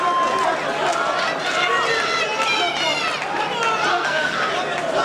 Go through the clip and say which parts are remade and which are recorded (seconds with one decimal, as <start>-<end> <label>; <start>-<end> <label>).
0.0-3.9 recorded; 3.9-4.5 remade; 4.5-5.0 recorded